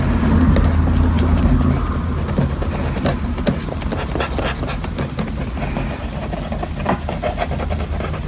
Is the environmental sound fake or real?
real